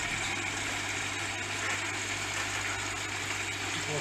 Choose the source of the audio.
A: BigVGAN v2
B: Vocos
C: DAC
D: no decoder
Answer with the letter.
D